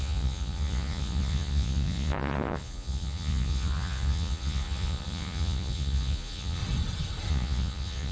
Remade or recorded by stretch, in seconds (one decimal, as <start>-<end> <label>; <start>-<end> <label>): 0.0-6.6 remade; 6.6-7.3 recorded; 7.3-8.1 remade